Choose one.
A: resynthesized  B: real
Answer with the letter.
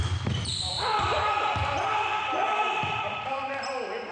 A